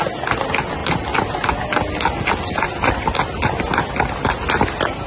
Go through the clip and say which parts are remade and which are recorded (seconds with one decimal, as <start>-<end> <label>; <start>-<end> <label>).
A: 0.0-5.1 recorded